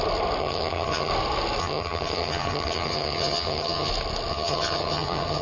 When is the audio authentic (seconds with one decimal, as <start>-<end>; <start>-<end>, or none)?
0.0-0.4; 1.1-1.6; 3.9-4.3